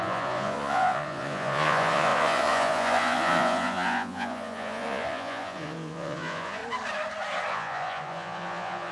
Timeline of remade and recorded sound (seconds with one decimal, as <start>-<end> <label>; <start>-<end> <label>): 0.0-6.6 remade; 6.6-7.5 recorded; 7.5-8.9 remade